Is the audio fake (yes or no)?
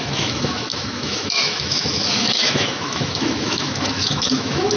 yes